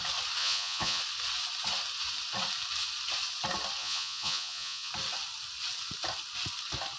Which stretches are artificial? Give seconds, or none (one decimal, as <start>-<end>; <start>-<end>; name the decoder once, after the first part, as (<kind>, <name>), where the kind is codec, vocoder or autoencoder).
0.4-1.0 (vocoder, Vocos); 3.8-4.9